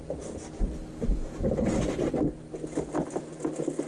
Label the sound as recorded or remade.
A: recorded